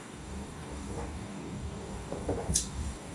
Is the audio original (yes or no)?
no